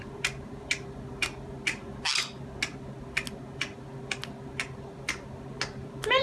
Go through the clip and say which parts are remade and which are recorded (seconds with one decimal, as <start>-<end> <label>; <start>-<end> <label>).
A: 0.0-6.2 recorded